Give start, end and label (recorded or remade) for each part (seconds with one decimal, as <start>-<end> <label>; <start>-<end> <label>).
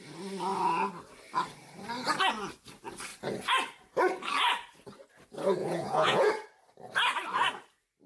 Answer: 0.0-5.6 recorded; 5.6-6.3 remade; 6.3-8.1 recorded